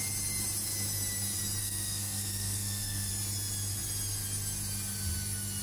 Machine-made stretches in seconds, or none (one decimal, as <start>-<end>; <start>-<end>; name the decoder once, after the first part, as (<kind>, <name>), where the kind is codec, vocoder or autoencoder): 1.6-3.1 (codec, SNAC)